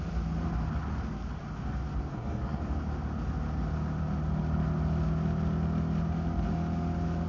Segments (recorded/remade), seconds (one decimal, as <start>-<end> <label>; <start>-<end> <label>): 0.0-2.1 recorded; 2.1-2.6 remade; 2.6-7.3 recorded